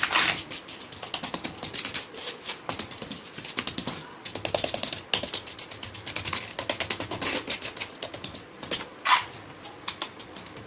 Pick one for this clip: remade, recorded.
recorded